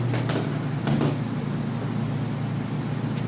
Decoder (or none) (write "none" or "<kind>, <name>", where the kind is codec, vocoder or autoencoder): vocoder, BigVGAN v2